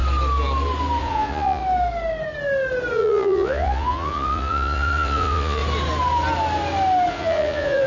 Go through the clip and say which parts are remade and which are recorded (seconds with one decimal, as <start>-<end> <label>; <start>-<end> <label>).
0.0-1.0 recorded; 1.0-1.6 remade; 1.6-2.9 recorded; 2.9-5.6 remade; 5.6-7.1 recorded; 7.1-7.9 remade